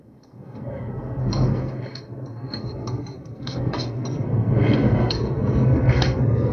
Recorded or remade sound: remade